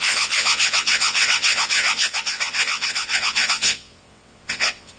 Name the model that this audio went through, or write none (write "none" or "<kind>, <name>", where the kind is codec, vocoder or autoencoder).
vocoder, WaveNeXt